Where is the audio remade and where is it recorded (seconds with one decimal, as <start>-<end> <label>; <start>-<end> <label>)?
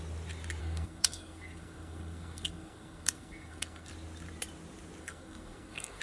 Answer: 0.0-0.6 recorded; 0.6-3.9 remade; 3.9-5.0 recorded; 5.0-6.0 remade